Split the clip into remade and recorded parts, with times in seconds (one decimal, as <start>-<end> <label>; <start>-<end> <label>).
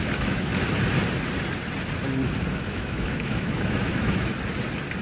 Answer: 0.0-0.5 remade; 0.5-2.5 recorded; 2.5-4.3 remade; 4.3-5.0 recorded